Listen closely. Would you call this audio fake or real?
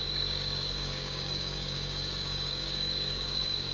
fake